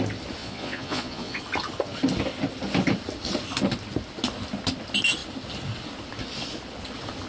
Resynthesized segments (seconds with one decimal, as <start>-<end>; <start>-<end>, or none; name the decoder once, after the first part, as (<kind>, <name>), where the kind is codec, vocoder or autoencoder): 0.4-1.4 (vocoder, Vocos)